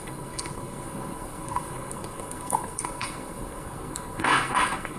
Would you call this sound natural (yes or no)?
no